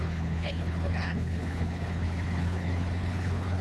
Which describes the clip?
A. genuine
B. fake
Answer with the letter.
B